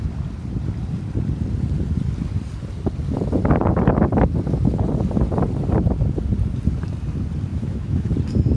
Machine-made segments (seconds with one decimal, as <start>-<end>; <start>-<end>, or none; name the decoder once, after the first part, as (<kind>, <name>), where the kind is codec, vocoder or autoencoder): 7.5-8.1 (autoencoder, DAC-VAE)